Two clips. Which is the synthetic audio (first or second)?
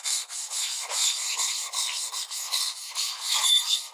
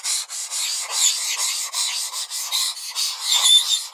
first